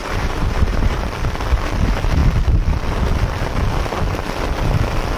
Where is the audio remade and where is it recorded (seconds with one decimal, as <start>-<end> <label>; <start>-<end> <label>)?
0.0-1.0 remade; 1.0-5.2 recorded